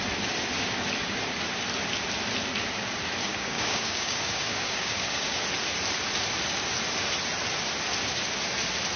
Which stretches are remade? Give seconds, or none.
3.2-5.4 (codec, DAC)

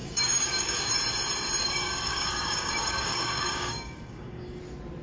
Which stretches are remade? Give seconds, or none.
0.0-0.9 (codec, DAC); 1.6-4.6

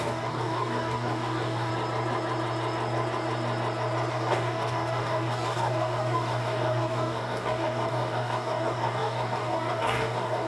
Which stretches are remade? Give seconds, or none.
0.0-1.7 (codec, DAC); 4.1-10.5

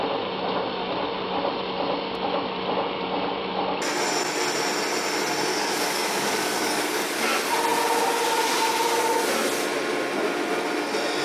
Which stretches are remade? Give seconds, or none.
5.5-7.1 (codec, DAC)

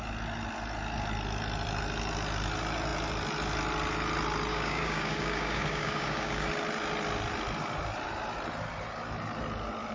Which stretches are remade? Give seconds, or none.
4.5-6.5 (codec, DAC)